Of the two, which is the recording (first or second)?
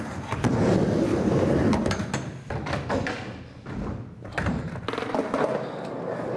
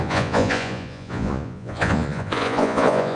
first